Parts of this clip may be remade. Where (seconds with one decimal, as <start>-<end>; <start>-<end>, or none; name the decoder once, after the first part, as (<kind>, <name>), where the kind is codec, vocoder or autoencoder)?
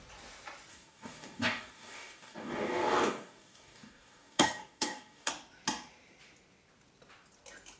0.7-5.3 (codec, DAC)